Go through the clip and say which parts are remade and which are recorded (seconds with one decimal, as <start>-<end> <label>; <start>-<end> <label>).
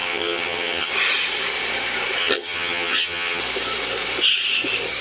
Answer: 0.0-0.9 remade; 0.9-2.2 recorded; 2.2-3.4 remade; 3.4-5.0 recorded